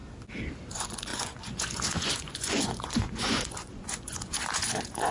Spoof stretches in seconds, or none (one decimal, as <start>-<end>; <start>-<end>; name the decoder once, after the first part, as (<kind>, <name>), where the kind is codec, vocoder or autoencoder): 0.7-5.1 (vocoder, Vocos)